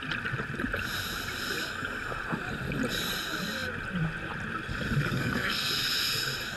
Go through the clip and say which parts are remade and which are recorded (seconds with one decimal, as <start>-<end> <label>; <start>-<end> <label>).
0.0-5.0 recorded; 5.0-5.7 remade; 5.7-6.6 recorded